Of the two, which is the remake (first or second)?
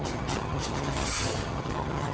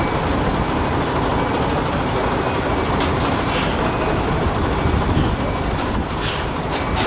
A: first